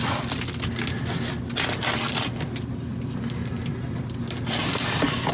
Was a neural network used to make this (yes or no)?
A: no